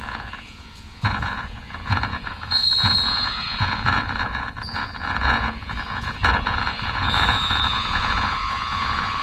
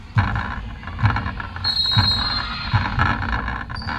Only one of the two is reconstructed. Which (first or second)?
first